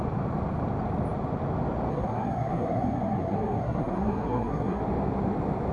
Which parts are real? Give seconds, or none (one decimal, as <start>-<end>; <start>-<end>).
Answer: 0.0-1.9; 4.8-5.7